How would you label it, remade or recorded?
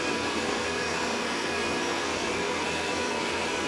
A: remade